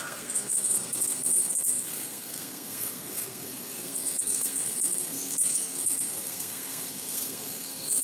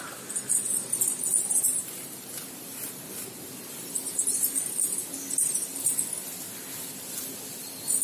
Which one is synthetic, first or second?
first